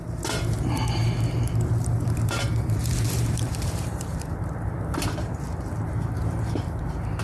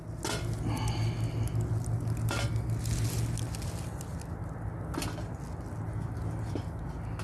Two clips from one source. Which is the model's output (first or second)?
first